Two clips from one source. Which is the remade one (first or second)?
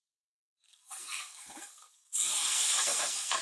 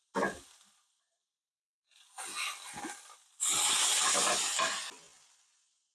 first